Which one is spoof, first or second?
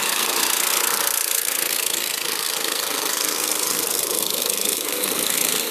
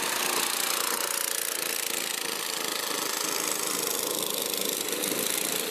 first